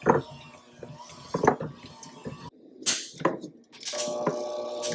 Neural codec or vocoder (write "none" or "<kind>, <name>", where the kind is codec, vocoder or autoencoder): none